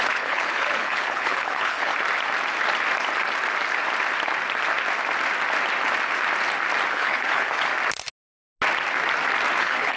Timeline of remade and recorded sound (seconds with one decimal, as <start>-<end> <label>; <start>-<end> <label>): 0.0-1.9 remade; 1.9-6.9 recorded; 6.9-7.7 remade; 7.7-9.6 recorded; 9.6-10.0 remade